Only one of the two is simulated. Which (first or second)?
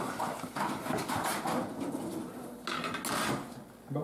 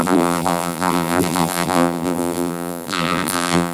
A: second